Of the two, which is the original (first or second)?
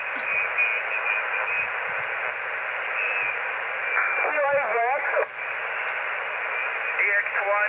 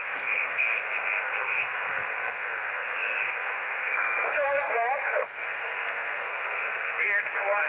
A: first